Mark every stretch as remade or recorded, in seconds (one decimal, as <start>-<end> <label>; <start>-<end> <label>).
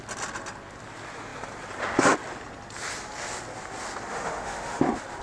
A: 0.0-4.1 recorded; 4.1-4.8 remade; 4.8-5.2 recorded